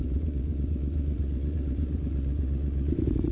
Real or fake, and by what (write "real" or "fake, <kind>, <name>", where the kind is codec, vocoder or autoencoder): fake, vocoder, Vocos